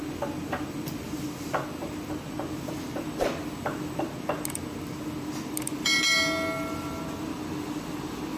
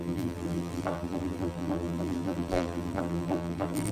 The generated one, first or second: second